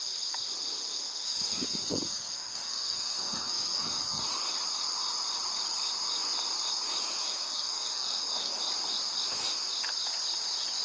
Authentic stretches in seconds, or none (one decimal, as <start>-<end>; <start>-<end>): 0.0-1.0; 4.2-7.2; 8.6-10.8